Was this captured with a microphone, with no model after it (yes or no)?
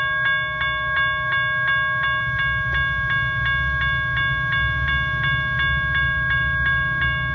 yes